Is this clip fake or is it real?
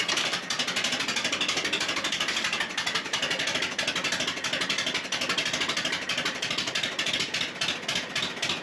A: real